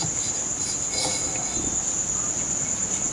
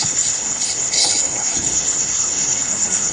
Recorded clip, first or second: first